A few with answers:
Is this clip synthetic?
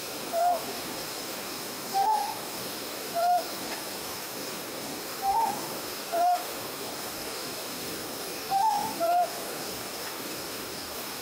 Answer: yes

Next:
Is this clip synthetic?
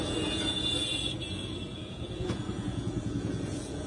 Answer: yes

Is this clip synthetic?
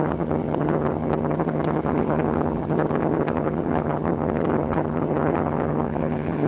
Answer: yes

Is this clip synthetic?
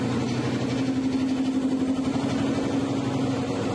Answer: no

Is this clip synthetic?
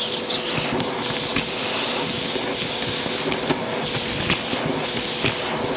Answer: no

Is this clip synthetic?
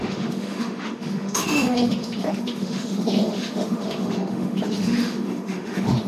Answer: yes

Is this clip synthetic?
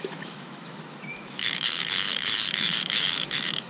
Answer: yes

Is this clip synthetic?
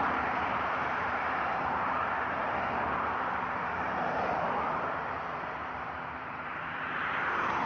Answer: yes